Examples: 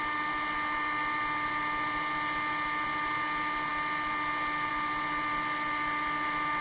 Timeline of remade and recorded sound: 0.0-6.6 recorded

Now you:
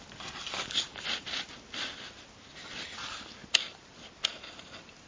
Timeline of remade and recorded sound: 0.0-5.1 recorded

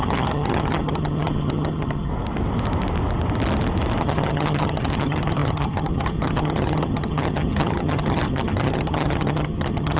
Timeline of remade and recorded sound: 0.0-2.1 remade; 2.1-4.0 recorded; 4.0-10.0 remade

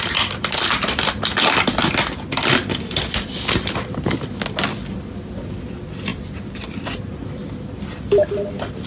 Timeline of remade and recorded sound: 0.0-8.9 recorded

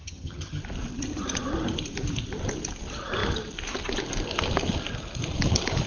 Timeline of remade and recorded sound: 0.0-0.6 remade; 0.6-5.9 recorded